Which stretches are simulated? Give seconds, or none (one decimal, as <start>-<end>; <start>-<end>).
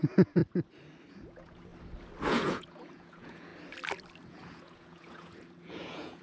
0.0-0.4; 1.1-1.7; 2.3-3.5; 4.3-6.2